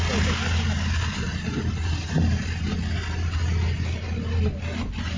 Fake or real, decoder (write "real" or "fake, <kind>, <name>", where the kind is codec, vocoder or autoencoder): real